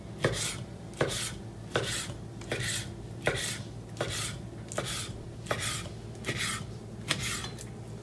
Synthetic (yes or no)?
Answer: no